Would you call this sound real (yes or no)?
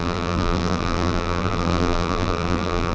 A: no